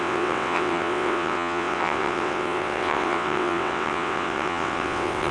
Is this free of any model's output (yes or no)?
no